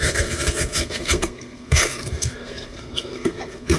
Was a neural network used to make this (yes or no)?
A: yes